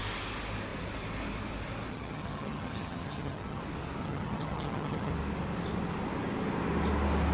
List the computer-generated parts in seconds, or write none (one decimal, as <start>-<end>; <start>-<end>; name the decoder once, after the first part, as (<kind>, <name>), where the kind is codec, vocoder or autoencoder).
1.9-3.6 (vocoder, HiFi-GAN); 4.0-5.1

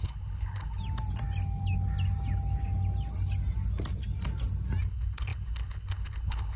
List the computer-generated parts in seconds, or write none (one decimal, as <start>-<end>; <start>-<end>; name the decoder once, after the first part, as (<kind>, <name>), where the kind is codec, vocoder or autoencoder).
0.0-0.8 (codec, HILCodec); 4.8-6.6

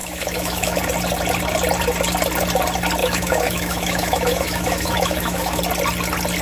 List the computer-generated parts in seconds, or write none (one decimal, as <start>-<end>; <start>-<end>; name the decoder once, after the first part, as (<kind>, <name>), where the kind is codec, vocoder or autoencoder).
0.0-0.8 (autoencoder, DAC-VAE); 3.0-5.6

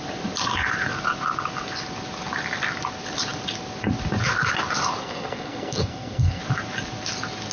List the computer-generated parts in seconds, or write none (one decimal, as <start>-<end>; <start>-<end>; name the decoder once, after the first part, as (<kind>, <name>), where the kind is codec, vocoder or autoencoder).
5.0-6.4 (codec, SNAC)

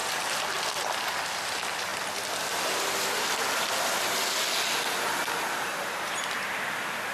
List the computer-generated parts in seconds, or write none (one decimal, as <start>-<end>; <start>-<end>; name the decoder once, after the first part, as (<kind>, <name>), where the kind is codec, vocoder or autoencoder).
none

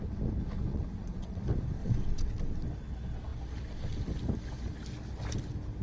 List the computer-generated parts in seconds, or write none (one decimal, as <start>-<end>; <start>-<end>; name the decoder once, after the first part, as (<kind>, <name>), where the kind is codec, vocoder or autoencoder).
0.7-1.4 (vocoder, WaveNeXt); 1.8-2.3

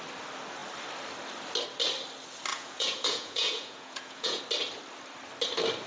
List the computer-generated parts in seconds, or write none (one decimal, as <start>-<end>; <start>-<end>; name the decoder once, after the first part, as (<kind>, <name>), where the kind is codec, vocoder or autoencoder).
2.5-4.4 (vocoder, Vocos)